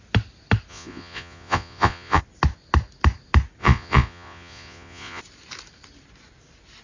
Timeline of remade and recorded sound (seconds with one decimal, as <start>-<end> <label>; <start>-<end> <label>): 0.0-0.7 recorded; 0.7-2.2 remade; 2.2-3.6 recorded; 3.6-5.2 remade; 5.2-6.8 recorded